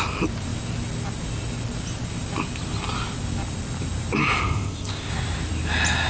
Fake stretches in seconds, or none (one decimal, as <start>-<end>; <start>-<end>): 4.4-5.1